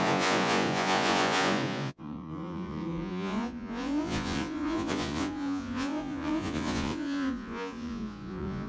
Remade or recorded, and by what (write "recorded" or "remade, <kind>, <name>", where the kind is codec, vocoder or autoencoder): remade, vocoder, Vocos